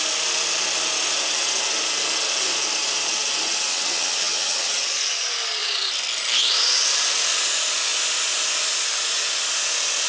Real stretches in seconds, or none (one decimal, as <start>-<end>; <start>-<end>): 0.0-3.7; 4.7-10.1